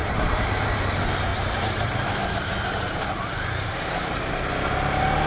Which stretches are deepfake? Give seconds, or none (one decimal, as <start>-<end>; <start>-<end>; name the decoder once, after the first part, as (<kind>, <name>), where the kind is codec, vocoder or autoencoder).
0.0-0.5 (vocoder, BigVGAN v2); 1.3-4.5